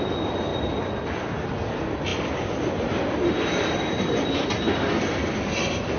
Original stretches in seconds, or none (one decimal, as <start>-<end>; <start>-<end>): 0.0-6.0